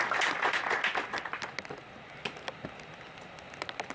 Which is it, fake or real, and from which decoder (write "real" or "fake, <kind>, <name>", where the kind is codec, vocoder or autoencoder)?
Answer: real